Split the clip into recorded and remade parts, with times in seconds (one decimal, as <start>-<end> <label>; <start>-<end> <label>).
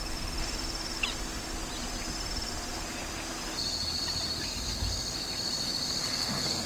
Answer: 0.0-6.1 recorded; 6.1-6.7 remade